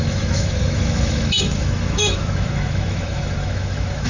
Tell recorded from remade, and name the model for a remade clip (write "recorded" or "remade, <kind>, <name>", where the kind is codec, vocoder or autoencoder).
remade, autoencoder, DAC-VAE